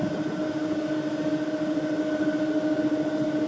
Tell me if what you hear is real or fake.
real